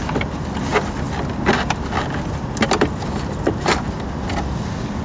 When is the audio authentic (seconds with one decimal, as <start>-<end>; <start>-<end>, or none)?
0.0-5.0